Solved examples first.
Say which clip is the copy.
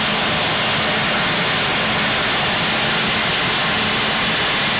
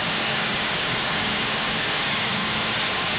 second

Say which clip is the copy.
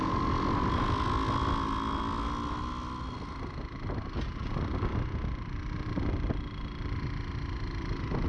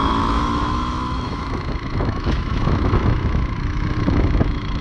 second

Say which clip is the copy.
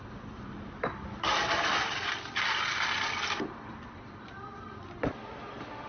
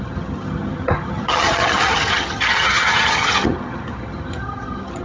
second